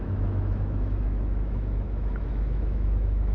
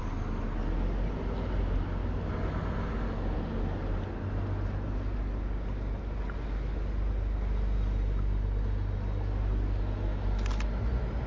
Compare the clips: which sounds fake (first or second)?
first